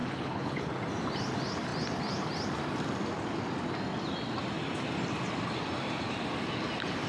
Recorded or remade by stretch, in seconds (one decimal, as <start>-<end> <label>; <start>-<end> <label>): 0.0-0.7 remade; 0.7-7.1 recorded